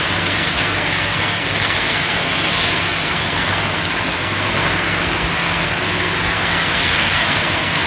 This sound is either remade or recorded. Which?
remade